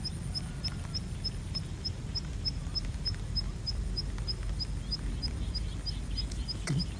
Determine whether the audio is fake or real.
real